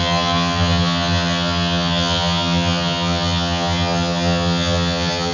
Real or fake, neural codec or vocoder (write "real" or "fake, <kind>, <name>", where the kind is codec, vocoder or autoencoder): fake, vocoder, HiFi-GAN